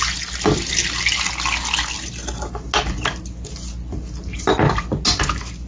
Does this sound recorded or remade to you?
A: recorded